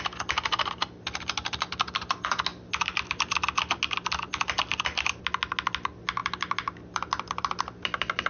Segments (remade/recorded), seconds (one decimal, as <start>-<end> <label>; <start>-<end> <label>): 0.0-8.3 recorded